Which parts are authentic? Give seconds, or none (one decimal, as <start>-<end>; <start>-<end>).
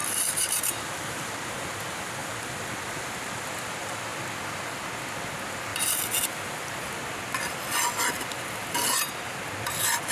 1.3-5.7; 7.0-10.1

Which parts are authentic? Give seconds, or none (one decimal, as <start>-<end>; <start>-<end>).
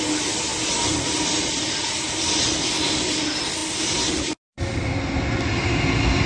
0.0-6.3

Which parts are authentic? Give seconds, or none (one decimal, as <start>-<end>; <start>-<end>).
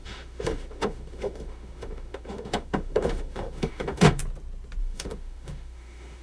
4.2-4.8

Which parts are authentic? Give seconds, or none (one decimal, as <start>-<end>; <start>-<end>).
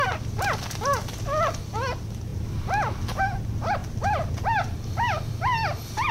0.0-6.1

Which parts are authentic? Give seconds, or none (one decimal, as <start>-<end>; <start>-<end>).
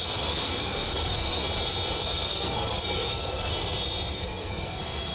1.4-2.0; 3.5-4.1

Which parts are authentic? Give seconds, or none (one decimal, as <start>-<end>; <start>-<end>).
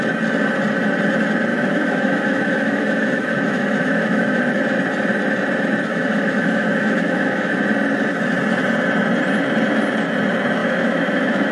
0.0-1.5; 4.4-5.9; 7.5-10.6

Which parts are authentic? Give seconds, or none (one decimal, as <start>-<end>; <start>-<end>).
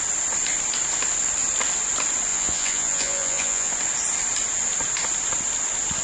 0.0-2.3; 3.7-6.0